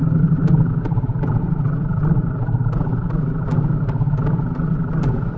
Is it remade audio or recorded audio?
recorded